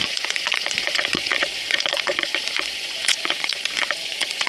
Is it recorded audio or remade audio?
remade